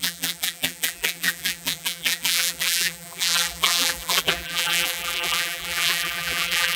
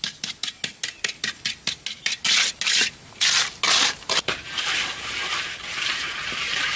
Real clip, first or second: second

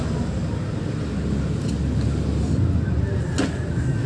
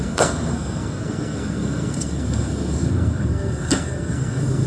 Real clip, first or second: first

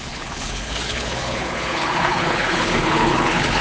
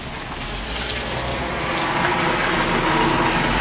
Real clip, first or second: second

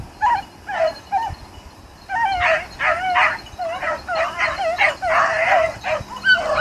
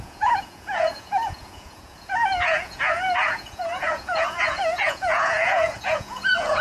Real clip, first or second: first